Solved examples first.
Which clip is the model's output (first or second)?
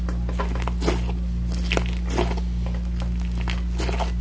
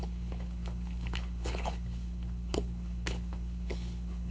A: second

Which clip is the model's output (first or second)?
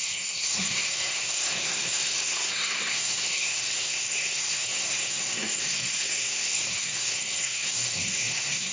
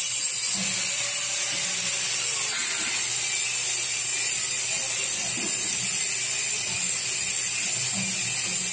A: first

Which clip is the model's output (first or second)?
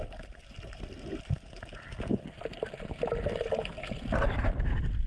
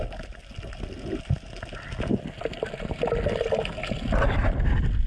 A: first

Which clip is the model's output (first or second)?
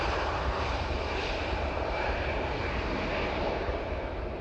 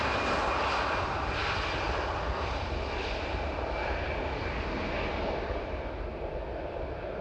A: first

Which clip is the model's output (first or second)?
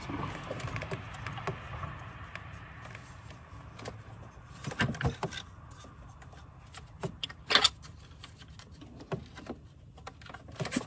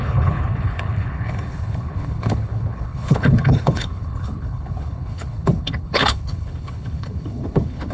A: second